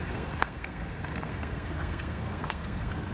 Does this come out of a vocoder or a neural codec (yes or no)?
yes